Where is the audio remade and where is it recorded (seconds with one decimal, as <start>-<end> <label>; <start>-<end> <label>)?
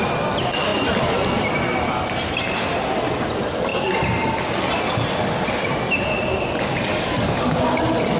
0.0-8.2 recorded